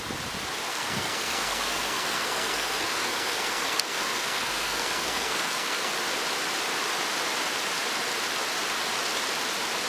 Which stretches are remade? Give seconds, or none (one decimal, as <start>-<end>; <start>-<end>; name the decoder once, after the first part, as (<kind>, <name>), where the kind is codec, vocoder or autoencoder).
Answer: 0.7-5.9 (codec, SNAC)